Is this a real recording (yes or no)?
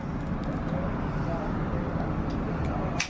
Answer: yes